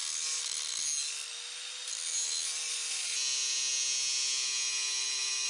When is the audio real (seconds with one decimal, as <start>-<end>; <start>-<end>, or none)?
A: 0.0-5.5